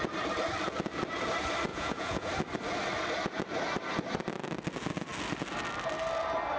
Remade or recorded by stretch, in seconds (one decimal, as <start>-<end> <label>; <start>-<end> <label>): 0.0-1.7 recorded; 1.7-2.3 remade; 2.3-6.6 recorded